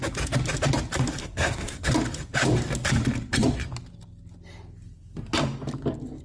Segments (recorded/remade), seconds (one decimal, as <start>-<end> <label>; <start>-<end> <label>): 0.0-1.2 recorded; 1.2-1.9 remade; 1.9-6.2 recorded